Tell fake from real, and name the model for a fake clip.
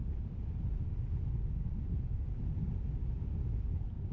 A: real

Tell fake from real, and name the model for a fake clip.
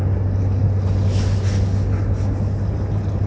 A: real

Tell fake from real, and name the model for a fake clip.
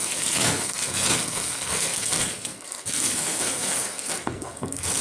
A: fake, codec, SNAC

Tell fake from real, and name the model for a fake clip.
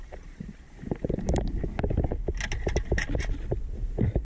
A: real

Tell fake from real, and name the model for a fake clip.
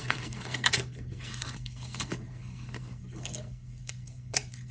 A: fake, codec, SNAC